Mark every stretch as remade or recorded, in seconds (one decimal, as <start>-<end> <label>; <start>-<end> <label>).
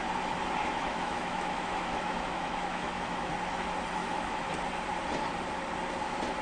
0.0-0.6 recorded; 0.6-3.3 remade; 3.3-4.0 recorded; 4.0-4.5 remade; 4.5-6.4 recorded